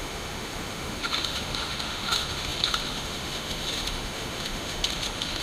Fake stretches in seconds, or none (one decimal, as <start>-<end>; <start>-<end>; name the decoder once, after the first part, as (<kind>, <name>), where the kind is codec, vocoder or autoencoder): 0.0-5.4 (autoencoder, DAC-VAE)